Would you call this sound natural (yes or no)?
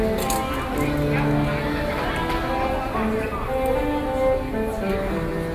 yes